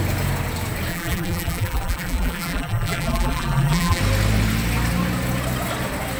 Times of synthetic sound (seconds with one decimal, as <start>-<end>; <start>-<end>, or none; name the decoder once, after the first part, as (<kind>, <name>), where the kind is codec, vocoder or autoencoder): 0.9-4.0 (vocoder, BigVGAN v2)

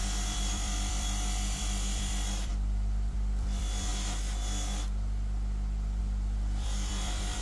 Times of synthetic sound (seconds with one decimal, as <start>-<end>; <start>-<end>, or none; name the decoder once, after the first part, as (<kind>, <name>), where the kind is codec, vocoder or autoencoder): 0.0-3.9 (vocoder, BigVGAN v2); 6.0-7.4

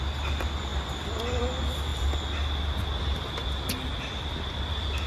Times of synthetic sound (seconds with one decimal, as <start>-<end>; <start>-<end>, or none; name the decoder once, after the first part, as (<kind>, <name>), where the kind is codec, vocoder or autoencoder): none